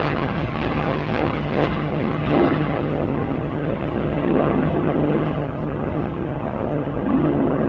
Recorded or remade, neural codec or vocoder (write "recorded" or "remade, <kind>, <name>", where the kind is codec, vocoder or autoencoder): remade, vocoder, HiFi-GAN